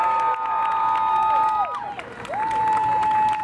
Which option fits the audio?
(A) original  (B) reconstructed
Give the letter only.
A